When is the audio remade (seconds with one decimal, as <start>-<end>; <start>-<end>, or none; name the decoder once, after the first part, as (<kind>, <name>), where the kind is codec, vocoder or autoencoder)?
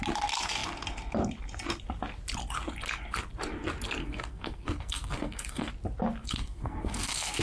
4.0-5.7 (codec, SNAC); 6.2-7.4